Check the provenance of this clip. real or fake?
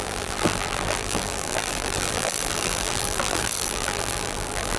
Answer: fake